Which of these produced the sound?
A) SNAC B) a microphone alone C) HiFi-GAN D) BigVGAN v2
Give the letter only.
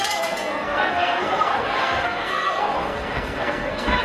A